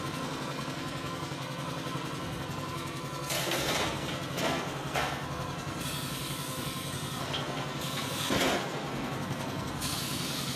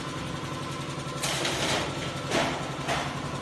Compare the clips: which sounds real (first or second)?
second